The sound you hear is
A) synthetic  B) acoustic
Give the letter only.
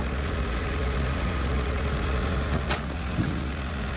A